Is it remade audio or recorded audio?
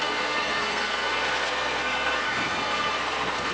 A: remade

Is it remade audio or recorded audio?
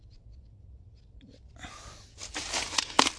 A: recorded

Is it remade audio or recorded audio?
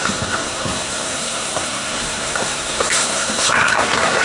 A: remade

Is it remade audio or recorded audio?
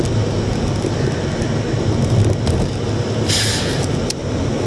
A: recorded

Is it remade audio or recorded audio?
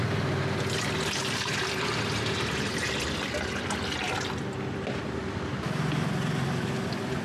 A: recorded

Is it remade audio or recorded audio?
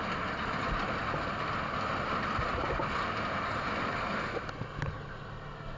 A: recorded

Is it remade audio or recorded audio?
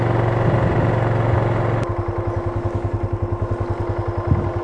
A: recorded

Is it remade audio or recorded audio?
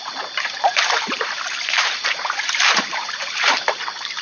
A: remade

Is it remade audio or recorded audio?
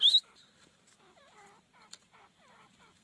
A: remade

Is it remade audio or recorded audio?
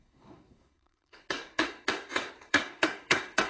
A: remade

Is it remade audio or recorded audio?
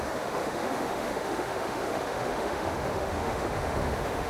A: remade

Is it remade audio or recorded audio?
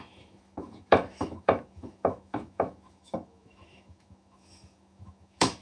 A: remade